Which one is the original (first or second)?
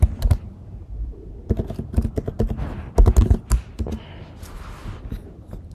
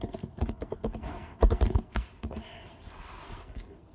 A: first